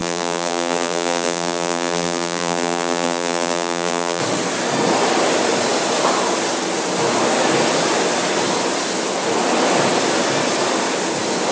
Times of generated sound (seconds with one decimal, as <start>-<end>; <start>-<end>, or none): 0.0-4.2